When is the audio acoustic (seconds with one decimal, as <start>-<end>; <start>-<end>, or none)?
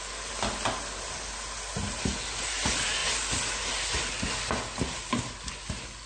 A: 0.0-6.1